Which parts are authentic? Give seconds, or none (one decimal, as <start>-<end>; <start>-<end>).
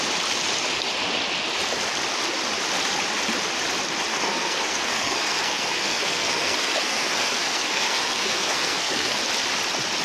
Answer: 0.0-4.1; 9.2-10.0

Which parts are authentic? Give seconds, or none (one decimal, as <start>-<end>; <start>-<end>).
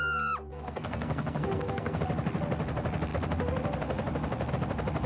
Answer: 0.0-0.5; 2.0-5.1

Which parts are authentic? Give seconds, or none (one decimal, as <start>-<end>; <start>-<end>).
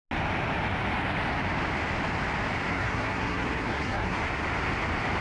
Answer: 0.0-2.7; 4.4-5.2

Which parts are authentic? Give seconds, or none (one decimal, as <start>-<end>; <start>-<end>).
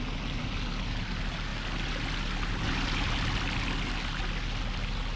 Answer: 0.0-5.2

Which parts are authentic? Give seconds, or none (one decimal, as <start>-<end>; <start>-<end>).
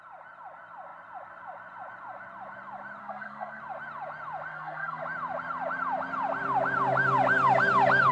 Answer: 0.0-3.0; 3.6-4.5; 5.0-8.1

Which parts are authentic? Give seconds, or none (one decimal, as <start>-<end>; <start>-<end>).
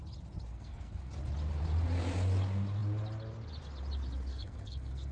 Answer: 0.0-0.5; 1.1-4.3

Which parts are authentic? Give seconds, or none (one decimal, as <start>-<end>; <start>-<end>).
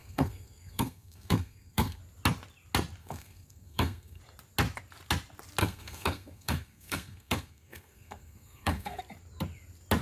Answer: 2.0-3.0; 4.2-5.6; 9.0-10.0